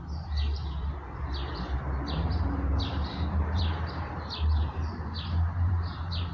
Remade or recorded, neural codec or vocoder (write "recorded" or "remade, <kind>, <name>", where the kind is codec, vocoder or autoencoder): remade, vocoder, BigVGAN v2